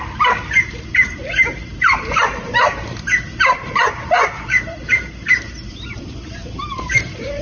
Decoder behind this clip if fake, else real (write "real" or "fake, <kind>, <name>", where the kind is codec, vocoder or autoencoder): fake, vocoder, BigVGAN v2